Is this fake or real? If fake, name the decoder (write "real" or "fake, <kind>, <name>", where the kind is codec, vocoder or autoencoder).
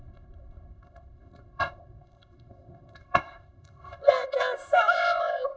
fake, codec, ZipCodec